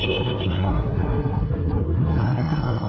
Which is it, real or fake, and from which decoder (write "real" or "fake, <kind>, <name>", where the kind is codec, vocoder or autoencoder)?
fake, codec, SNAC